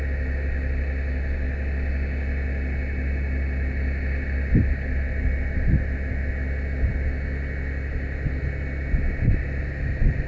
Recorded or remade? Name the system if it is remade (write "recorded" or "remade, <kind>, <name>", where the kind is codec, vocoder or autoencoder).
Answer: recorded